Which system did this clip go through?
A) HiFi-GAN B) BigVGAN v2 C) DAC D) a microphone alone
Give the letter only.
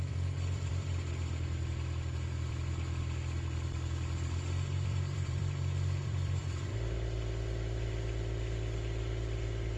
B